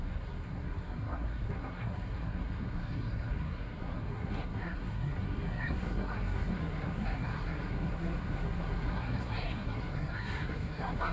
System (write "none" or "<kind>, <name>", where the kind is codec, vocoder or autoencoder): codec, SNAC